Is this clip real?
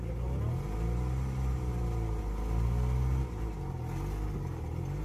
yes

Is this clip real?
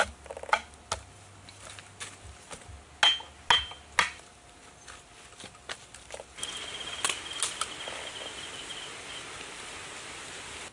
yes